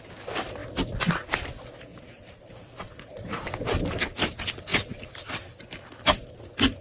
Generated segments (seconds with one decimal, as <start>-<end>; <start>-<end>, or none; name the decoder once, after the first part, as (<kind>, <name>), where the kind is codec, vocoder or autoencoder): 1.9-3.5 (vocoder, BigVGAN v2)